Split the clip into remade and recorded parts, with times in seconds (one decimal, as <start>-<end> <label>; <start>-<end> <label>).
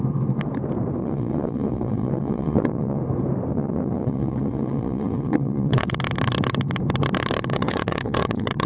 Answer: 0.0-1.0 recorded; 1.0-3.0 remade; 3.0-3.5 recorded; 3.5-6.0 remade; 6.0-7.5 recorded; 7.5-8.7 remade